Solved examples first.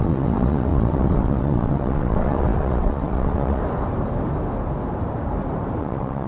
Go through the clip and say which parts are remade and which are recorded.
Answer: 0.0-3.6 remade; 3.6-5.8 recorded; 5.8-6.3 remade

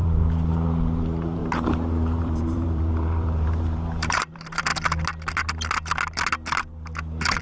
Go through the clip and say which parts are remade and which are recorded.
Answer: 0.0-4.7 remade; 4.7-7.4 recorded

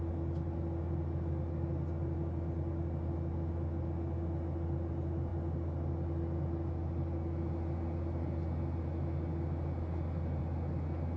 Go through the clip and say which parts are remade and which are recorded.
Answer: 0.0-11.2 recorded

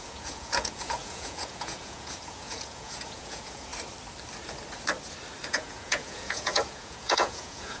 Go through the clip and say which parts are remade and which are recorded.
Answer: 0.0-3.7 remade; 3.7-5.5 recorded; 5.5-7.8 remade

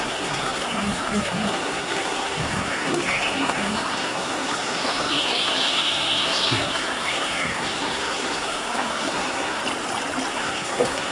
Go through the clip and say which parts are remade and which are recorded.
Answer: 0.0-9.6 remade; 9.6-10.3 recorded; 10.3-11.1 remade

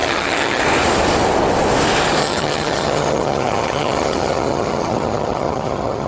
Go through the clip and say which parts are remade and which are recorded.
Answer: 0.0-0.6 remade; 0.6-2.2 recorded; 2.2-6.1 remade

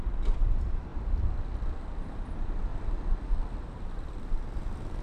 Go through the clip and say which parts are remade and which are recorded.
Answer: 0.0-0.9 remade; 0.9-1.8 recorded; 1.8-2.7 remade; 2.7-3.6 recorded; 3.6-5.0 remade

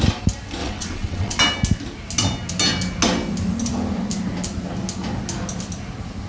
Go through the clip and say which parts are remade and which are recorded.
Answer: 0.0-0.6 recorded; 0.6-1.4 remade; 1.4-6.3 recorded